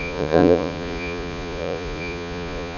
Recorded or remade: remade